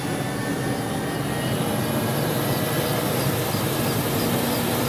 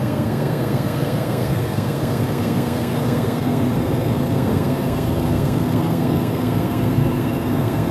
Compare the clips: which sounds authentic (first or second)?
first